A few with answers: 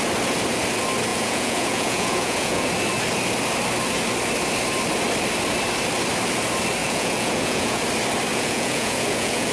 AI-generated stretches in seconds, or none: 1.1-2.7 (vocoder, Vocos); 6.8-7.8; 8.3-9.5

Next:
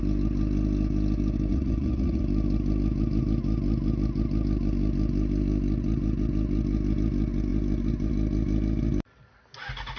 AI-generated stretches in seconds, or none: 1.5-2.2 (vocoder, Vocos)

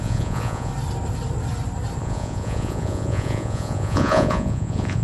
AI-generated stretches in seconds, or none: 0.0-0.7 (vocoder, Vocos); 2.0-5.0